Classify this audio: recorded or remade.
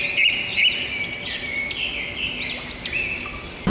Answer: recorded